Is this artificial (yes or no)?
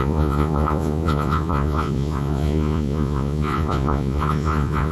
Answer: yes